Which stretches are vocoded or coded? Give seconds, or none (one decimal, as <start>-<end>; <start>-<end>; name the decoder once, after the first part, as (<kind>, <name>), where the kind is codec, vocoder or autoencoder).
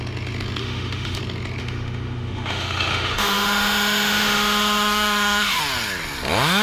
0.6-1.2 (autoencoder, DAC-VAE); 1.6-5.6